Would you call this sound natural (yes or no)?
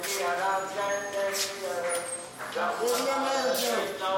yes